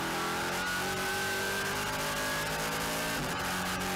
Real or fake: real